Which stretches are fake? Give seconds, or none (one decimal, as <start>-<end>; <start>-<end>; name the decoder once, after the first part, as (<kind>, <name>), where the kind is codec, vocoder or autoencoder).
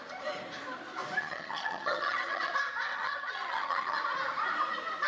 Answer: 1.2-2.5 (vocoder, HiFi-GAN); 2.9-4.0